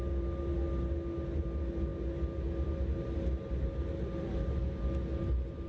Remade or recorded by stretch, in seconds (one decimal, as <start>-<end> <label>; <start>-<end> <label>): 0.0-5.7 recorded